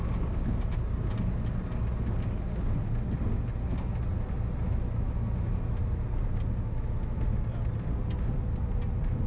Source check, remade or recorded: recorded